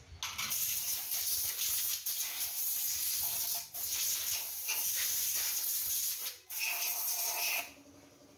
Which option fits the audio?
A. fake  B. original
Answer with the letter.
B